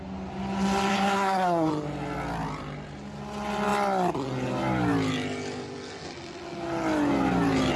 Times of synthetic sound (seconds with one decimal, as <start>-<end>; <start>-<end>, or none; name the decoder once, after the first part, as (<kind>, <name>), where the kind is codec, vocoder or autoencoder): 0.9-1.7 (codec, SNAC)